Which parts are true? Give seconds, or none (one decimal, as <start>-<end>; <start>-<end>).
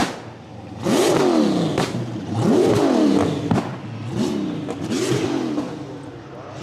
0.0-1.7; 3.4-6.6